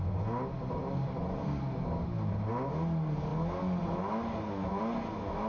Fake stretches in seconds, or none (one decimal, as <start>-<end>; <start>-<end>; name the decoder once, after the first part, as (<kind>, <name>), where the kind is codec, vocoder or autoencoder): none